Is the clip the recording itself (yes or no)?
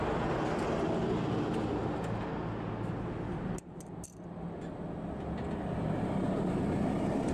yes